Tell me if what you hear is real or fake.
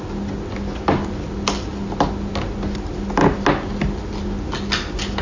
real